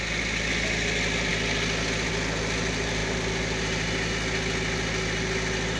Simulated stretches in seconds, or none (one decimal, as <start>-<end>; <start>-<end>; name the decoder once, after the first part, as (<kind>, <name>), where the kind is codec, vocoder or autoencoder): none